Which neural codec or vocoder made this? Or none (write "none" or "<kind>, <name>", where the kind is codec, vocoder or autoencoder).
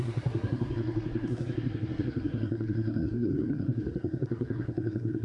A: codec, SNAC